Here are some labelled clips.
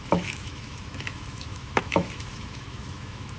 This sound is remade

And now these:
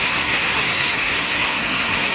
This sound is remade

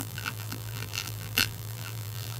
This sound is remade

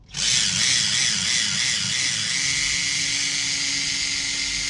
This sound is recorded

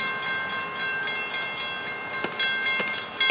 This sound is recorded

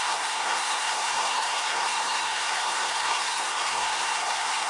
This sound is remade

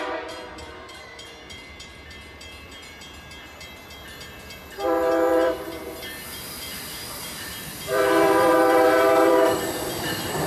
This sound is remade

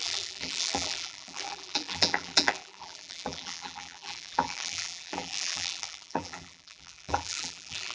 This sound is remade